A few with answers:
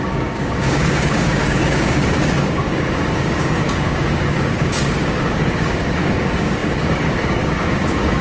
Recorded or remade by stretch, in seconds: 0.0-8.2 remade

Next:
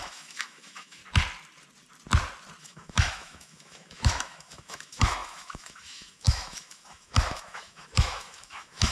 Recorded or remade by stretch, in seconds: 0.0-1.0 remade; 1.0-2.6 recorded; 2.6-8.9 remade

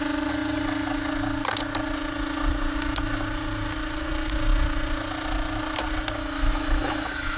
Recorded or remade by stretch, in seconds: 0.0-6.2 recorded; 6.2-7.4 remade

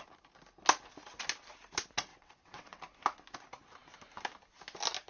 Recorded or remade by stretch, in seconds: 0.0-2.1 recorded; 2.1-2.8 remade; 2.8-5.1 recorded

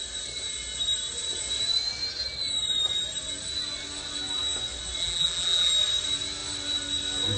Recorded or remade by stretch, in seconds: 0.0-5.0 recorded; 5.0-5.7 remade; 5.7-7.4 recorded

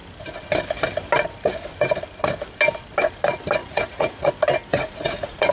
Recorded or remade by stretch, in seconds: 0.0-3.6 recorded; 3.6-4.3 remade; 4.3-4.7 recorded; 4.7-5.5 remade